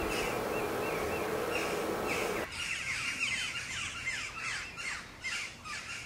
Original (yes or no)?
yes